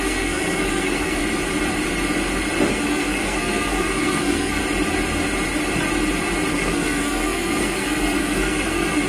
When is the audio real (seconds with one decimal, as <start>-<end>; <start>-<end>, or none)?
1.2-2.7; 4.6-6.5